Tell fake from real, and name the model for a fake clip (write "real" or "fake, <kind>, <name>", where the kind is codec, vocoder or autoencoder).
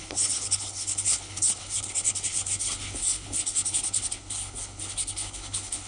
fake, codec, HILCodec